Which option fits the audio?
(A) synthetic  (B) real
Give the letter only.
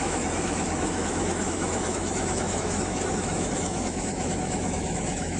A